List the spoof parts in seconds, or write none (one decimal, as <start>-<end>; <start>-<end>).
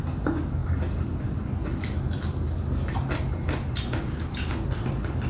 none